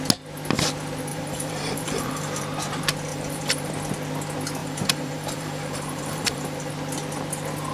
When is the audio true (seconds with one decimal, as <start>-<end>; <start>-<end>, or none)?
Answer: 0.0-1.1; 2.4-3.1; 3.7-4.6; 6.7-7.7